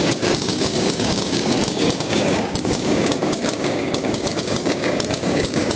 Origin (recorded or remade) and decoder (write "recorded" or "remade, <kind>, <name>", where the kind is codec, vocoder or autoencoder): remade, codec, DAC